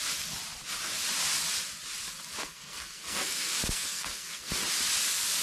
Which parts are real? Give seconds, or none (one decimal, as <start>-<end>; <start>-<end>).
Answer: 0.0-2.4; 4.5-5.4